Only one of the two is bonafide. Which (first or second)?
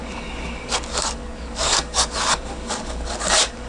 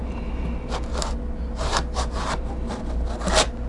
second